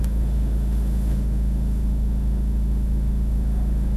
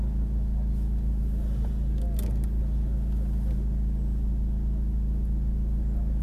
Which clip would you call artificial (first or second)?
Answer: first